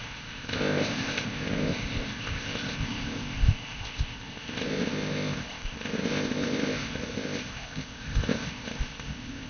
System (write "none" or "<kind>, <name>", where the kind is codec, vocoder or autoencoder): codec, ZipCodec